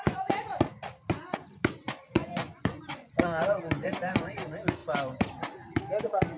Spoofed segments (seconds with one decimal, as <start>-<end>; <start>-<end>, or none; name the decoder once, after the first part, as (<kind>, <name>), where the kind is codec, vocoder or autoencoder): 0.0-0.5 (vocoder, Vocos); 1.1-1.6; 2.1-4.8; 6.0-6.4